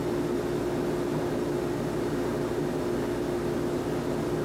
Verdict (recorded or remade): recorded